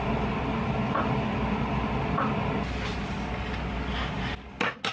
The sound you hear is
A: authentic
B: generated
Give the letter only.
A